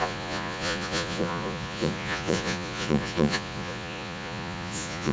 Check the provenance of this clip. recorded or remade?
remade